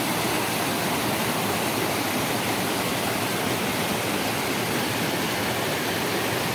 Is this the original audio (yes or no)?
yes